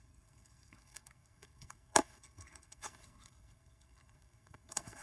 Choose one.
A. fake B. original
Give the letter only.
A